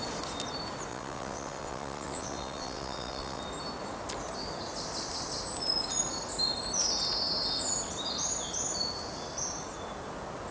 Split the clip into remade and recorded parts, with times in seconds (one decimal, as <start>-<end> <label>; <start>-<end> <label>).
0.0-0.9 recorded; 0.9-3.4 remade; 3.4-10.5 recorded